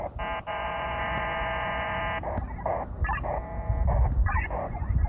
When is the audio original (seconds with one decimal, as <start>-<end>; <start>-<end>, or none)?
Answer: 0.0-0.5; 2.0-4.2